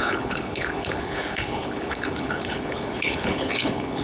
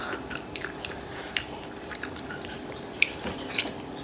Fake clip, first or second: first